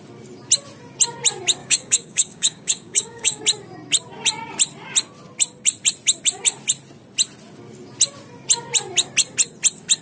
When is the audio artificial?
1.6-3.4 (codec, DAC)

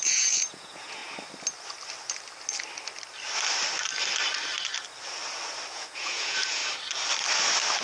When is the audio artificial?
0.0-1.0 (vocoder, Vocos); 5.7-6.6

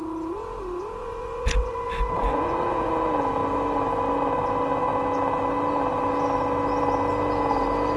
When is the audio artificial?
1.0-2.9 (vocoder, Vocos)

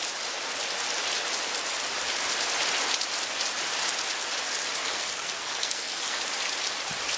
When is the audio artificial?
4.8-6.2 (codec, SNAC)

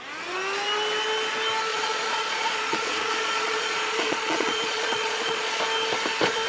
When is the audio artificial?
1.7-5.6 (vocoder, Vocos)